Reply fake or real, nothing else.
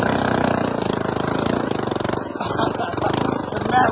real